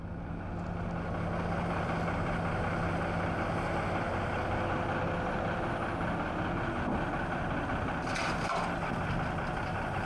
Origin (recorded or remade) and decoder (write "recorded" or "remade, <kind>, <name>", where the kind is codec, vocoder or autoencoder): recorded